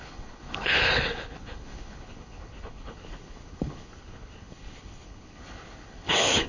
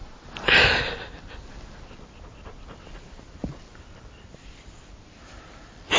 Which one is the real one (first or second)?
second